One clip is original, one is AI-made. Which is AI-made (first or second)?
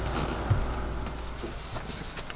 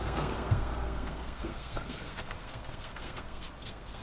second